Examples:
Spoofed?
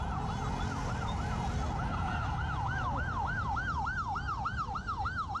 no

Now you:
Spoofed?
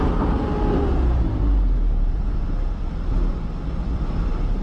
no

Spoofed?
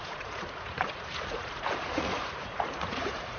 yes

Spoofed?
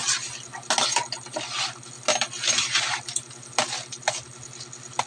no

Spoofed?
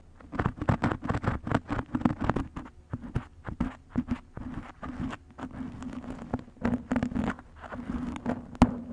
no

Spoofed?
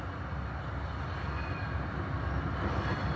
no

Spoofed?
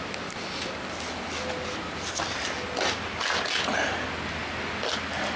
no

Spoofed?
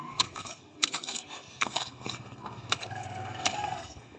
yes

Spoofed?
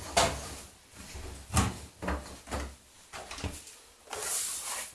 no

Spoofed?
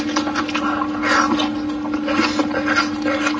no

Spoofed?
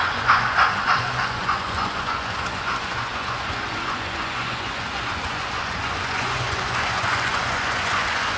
yes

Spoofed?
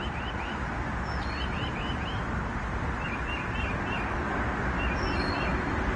no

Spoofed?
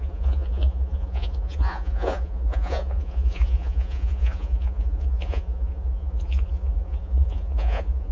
yes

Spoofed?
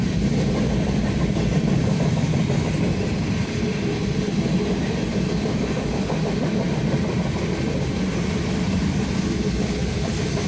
yes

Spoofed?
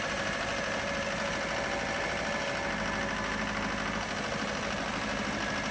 no